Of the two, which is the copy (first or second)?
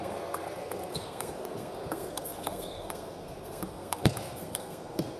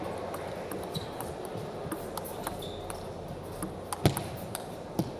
first